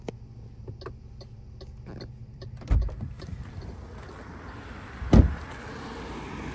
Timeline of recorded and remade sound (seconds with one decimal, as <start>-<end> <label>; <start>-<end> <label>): 0.0-2.2 recorded; 2.2-6.1 remade; 6.1-6.5 recorded